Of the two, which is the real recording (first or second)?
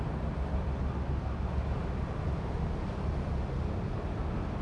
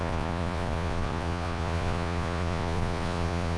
first